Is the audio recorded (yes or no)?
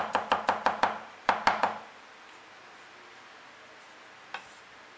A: yes